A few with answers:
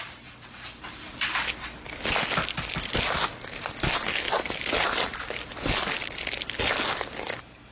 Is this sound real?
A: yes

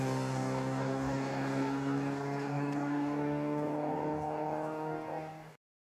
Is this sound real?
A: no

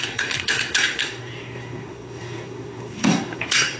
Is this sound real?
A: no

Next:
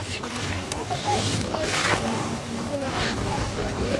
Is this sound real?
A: no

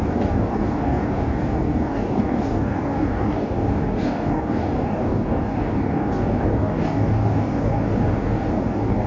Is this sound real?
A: no